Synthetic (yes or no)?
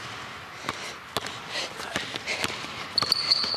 no